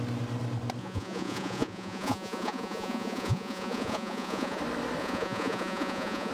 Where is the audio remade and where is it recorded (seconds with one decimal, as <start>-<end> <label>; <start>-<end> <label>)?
0.0-0.8 recorded; 0.8-4.6 remade; 4.6-5.0 recorded; 5.0-6.3 remade